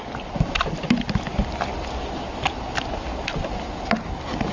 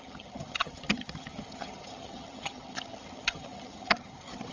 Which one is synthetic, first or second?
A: second